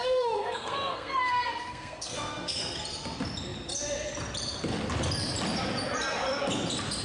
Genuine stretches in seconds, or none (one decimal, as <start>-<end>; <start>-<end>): 2.6-7.0